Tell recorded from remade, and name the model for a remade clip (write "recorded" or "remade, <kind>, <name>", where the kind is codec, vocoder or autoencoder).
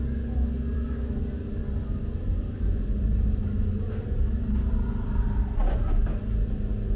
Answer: recorded